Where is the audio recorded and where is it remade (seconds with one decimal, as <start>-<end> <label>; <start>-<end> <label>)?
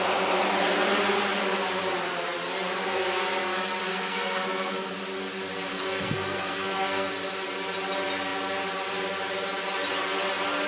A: 0.0-3.9 recorded; 3.9-4.9 remade; 4.9-5.7 recorded; 5.7-7.1 remade; 7.1-10.7 recorded